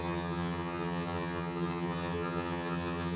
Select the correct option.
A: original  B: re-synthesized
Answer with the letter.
B